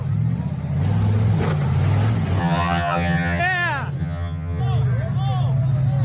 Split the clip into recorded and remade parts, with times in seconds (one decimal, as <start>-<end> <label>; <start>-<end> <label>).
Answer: 0.0-2.4 recorded; 2.4-3.4 remade; 3.4-4.0 recorded; 4.0-4.6 remade; 4.6-6.0 recorded